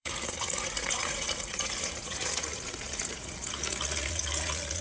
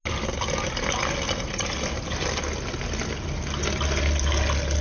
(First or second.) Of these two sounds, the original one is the second